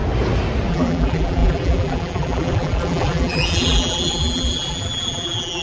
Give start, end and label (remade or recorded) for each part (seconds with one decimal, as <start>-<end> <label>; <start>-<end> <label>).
0.0-0.7 recorded; 0.7-5.6 remade